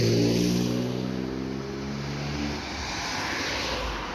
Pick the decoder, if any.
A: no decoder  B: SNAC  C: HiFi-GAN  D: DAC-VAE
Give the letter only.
A